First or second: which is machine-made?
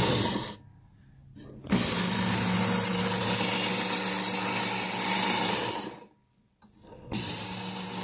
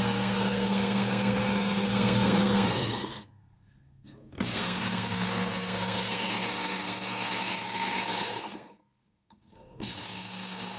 second